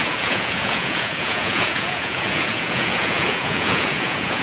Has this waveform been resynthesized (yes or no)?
yes